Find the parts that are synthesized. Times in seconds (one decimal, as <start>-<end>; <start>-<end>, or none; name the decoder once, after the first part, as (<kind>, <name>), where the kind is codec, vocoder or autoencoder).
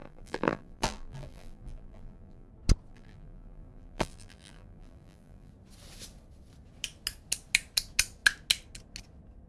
0.0-2.5 (vocoder, BigVGAN v2); 2.9-5.5